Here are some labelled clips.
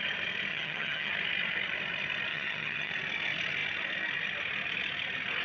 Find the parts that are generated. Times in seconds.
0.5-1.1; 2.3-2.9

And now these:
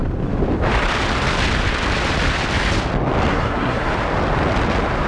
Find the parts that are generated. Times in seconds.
3.3-3.9